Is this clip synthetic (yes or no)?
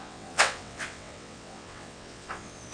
yes